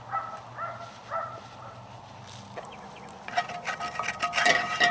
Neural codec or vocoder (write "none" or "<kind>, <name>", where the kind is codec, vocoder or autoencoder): none